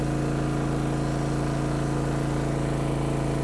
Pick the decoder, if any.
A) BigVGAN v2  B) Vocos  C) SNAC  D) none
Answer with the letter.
D